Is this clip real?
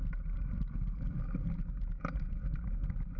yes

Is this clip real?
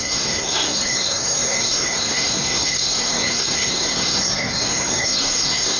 no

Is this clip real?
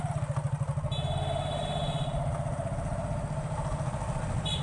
yes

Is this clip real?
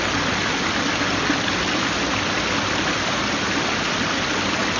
yes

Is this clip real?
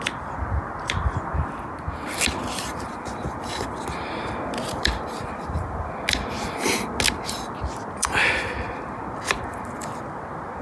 yes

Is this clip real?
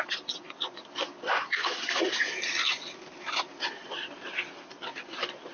yes